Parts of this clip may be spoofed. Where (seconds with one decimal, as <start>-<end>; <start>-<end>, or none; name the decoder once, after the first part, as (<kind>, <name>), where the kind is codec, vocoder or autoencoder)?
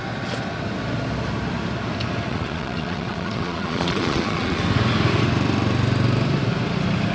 2.3-4.6 (vocoder, Vocos)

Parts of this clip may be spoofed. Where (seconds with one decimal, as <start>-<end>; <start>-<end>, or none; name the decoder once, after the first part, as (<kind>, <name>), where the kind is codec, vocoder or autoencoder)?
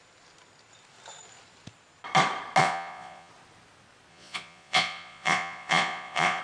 2.6-3.3 (vocoder, Vocos); 4.1-6.4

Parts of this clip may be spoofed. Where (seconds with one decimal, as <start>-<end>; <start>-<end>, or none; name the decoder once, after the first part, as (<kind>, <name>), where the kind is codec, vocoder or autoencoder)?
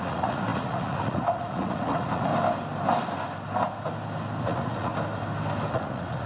0.0-2.3 (vocoder, Vocos); 4.4-4.9; 5.7-6.3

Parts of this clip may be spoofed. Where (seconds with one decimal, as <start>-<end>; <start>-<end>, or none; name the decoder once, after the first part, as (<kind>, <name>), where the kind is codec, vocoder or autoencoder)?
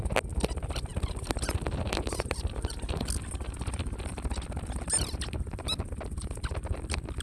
none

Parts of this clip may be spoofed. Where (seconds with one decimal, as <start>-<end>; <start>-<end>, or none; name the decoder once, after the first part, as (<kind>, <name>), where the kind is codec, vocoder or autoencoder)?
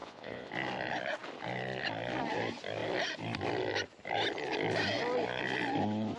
0.0-0.5 (vocoder, Vocos)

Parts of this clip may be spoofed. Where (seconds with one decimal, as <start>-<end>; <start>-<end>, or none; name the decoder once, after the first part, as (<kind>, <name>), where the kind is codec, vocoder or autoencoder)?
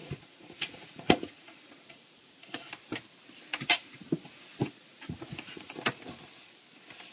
0.0-2.7 (vocoder, Vocos); 3.5-4.0; 4.6-5.9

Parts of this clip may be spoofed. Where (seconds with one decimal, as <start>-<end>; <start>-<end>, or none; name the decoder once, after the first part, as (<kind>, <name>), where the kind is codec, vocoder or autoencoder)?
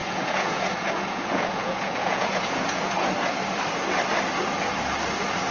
0.0-3.3 (vocoder, Vocos)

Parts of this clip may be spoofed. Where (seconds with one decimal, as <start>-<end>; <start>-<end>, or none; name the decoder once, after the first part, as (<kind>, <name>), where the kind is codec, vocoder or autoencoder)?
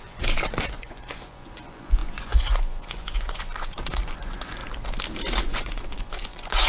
0.0-4.6 (vocoder, Vocos); 5.4-6.7